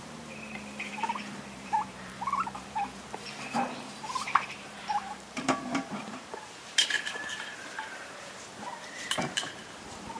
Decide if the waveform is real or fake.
fake